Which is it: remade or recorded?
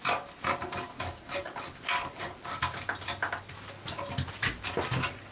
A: recorded